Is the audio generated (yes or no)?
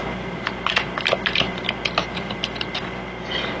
no